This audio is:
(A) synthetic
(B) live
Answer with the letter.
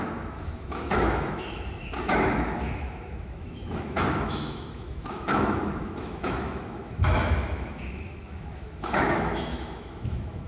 A